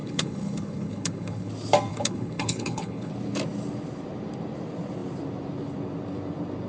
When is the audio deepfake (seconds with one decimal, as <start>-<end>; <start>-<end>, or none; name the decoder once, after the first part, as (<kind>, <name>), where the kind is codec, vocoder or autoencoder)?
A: 0.0-1.5 (codec, HILCodec); 1.9-3.1